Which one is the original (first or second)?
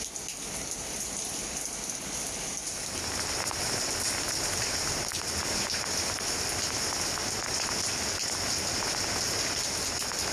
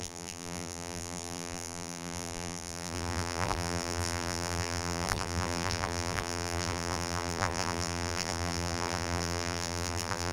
first